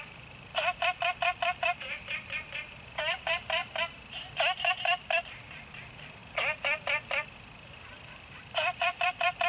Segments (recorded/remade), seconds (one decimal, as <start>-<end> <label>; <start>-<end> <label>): 0.0-3.6 remade; 3.6-4.7 recorded; 4.7-6.2 remade; 6.2-7.7 recorded; 7.7-9.5 remade